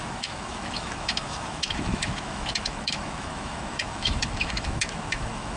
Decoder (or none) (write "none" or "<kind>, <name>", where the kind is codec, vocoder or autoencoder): autoencoder, DAC-VAE